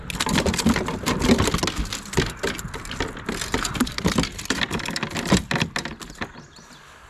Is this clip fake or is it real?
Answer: real